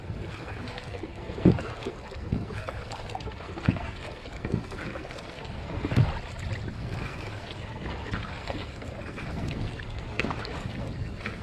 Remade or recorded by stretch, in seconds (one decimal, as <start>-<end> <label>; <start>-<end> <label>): 0.0-6.1 remade; 6.1-6.7 recorded; 6.7-11.4 remade